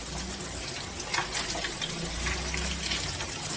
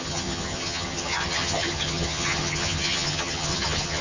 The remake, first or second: second